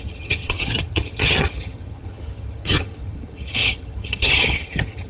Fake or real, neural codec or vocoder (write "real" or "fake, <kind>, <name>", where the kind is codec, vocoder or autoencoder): fake, vocoder, HiFi-GAN